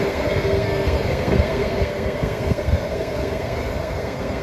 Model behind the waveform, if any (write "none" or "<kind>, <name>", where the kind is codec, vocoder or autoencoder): codec, SNAC